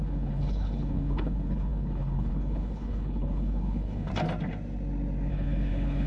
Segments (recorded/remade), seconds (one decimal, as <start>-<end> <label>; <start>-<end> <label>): 0.0-4.1 remade; 4.1-5.3 recorded; 5.3-6.1 remade